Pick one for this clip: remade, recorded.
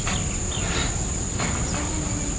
recorded